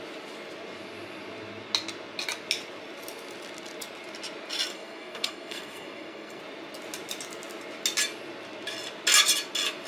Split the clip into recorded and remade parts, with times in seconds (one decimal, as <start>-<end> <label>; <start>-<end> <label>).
0.0-4.7 recorded; 4.7-6.4 remade; 6.4-9.9 recorded